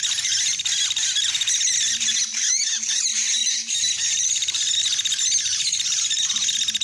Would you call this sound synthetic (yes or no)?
no